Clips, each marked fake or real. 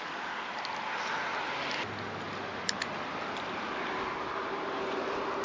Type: real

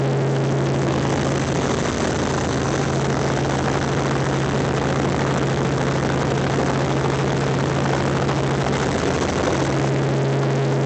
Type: real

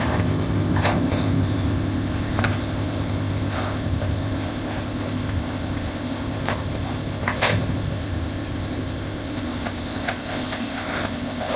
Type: fake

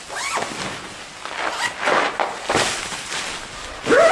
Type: real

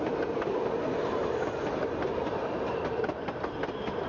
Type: real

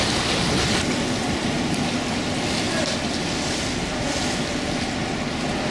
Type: real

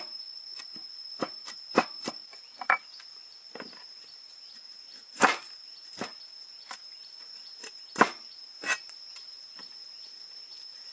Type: fake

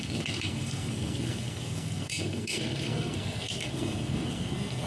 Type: fake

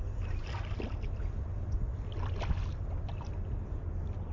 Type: real